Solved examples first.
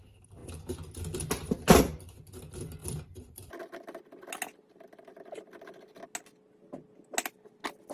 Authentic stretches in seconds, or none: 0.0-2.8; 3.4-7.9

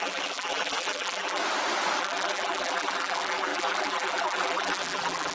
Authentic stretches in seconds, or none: 1.4-2.0

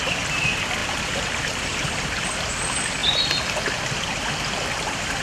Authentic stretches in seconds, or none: 0.0-0.8; 2.5-5.2

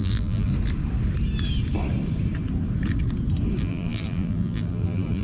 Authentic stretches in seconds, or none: 0.5-3.6

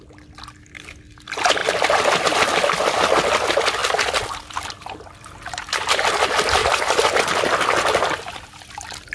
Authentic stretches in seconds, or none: 0.0-3.8; 6.1-6.6; 8.6-9.1